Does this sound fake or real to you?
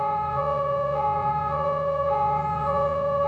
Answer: fake